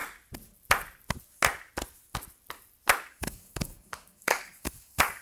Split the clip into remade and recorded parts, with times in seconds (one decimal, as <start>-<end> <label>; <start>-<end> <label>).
0.0-3.1 recorded; 3.1-5.2 remade

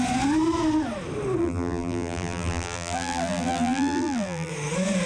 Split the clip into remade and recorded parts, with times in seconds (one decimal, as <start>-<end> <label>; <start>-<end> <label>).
0.0-1.4 recorded; 1.4-4.5 remade; 4.5-5.1 recorded

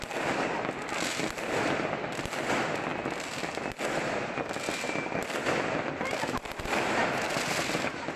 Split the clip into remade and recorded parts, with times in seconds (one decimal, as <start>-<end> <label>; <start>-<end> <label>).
0.0-8.2 recorded

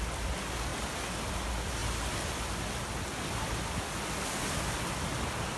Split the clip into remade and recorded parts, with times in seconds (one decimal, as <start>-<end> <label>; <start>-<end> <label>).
0.0-5.6 recorded